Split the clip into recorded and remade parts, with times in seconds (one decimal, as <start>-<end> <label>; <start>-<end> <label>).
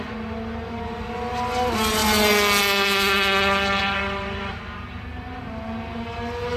0.0-3.8 recorded; 3.8-4.5 remade; 4.5-6.6 recorded